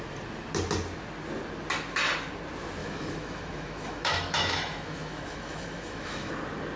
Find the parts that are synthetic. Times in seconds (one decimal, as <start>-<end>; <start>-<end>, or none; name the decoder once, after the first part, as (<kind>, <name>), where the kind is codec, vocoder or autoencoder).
2.8-6.3 (autoencoder, DAC-VAE)